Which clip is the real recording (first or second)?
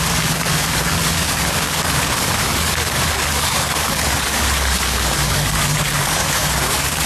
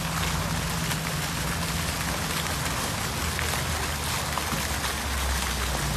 second